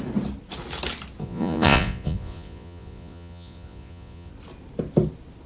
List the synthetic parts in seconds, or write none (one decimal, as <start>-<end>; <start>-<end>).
1.2-4.3